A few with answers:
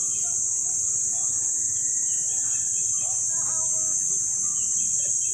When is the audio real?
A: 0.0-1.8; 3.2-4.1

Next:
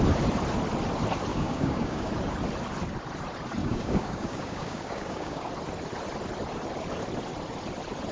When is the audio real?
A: 0.0-1.3; 2.1-3.6; 5.5-8.1

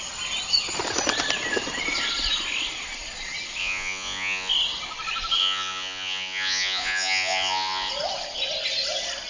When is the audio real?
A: 0.0-3.6; 4.5-5.4; 7.9-9.3

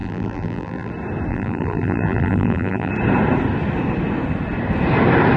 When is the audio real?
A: 0.9-1.3; 2.9-5.4